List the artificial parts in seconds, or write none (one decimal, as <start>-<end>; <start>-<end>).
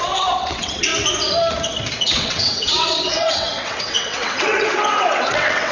0.0-0.9; 2.0-5.7